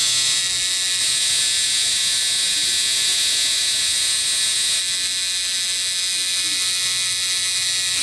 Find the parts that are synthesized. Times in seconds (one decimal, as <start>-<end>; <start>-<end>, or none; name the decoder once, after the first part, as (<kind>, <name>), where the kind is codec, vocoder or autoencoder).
0.0-0.4 (vocoder, Vocos); 1.0-4.8